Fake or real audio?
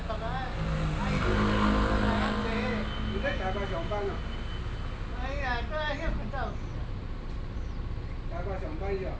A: real